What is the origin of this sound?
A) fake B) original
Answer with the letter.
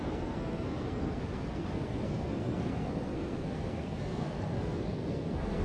A